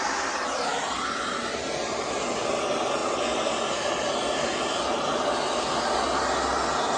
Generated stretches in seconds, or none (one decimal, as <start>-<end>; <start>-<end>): none